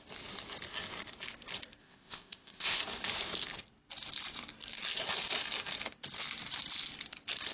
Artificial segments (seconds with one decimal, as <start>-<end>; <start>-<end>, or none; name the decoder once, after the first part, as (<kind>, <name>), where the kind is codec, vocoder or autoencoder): 1.8-2.8 (codec, ZipCodec)